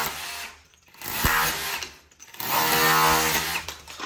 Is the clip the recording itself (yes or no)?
yes